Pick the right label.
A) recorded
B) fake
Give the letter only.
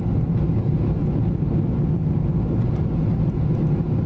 A